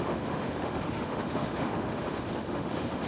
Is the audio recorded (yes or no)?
no